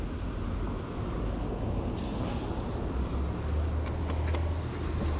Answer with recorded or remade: recorded